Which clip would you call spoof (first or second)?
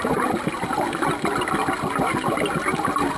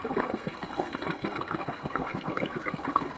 second